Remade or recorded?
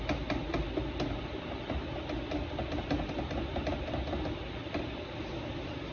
recorded